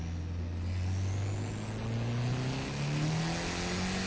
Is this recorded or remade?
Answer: recorded